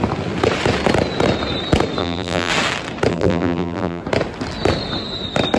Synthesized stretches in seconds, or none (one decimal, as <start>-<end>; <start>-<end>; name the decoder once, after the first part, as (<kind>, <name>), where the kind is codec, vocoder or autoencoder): 2.0-2.5 (vocoder, BigVGAN v2); 3.1-4.0